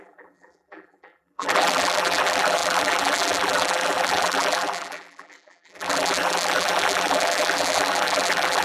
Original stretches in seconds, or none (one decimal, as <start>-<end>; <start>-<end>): none